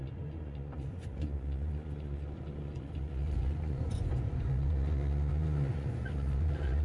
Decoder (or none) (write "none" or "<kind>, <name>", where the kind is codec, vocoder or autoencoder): vocoder, Vocos